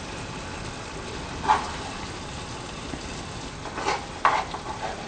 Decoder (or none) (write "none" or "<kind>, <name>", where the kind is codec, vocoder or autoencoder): none